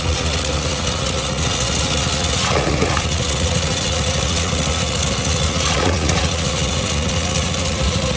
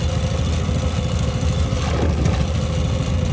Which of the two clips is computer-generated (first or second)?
first